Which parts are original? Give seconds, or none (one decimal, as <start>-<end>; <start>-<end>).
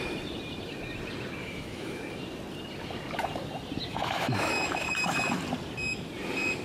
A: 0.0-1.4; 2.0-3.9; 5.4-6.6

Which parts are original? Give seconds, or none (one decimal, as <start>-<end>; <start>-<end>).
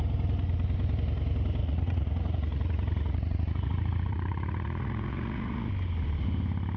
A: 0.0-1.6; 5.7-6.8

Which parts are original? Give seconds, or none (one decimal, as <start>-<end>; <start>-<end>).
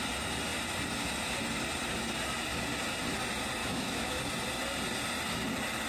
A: 0.0-3.6; 4.2-5.9